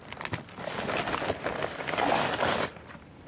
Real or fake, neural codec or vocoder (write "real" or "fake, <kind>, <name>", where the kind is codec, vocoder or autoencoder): real